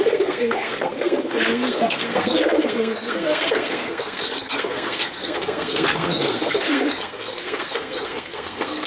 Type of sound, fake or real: fake